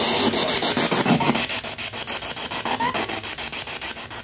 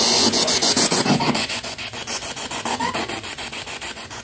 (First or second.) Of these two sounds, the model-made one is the second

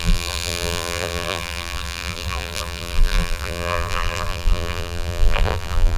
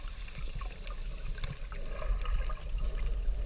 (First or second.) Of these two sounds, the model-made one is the first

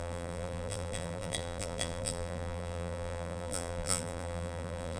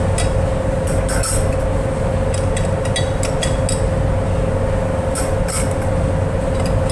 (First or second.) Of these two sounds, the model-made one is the first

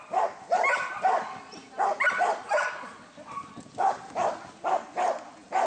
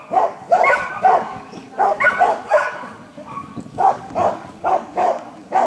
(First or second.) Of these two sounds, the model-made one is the second